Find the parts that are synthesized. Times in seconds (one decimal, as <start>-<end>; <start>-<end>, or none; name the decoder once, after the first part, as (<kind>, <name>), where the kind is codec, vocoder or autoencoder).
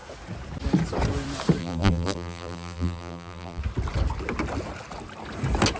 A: 1.6-3.6 (vocoder, BigVGAN v2)